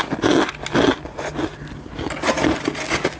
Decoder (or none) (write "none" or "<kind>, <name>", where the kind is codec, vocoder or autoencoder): none